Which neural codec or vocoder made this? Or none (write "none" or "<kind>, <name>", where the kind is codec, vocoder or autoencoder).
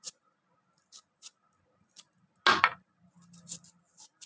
none